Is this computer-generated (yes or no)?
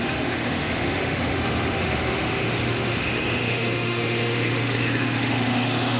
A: yes